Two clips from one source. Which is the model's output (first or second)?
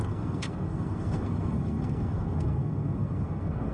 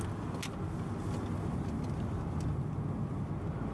first